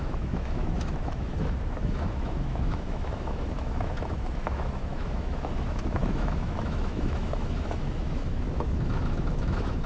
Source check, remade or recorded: remade